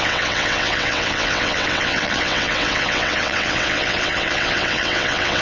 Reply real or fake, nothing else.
fake